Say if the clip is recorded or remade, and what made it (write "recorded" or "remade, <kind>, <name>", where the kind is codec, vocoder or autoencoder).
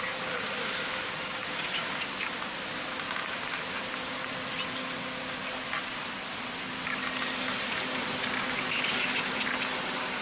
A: recorded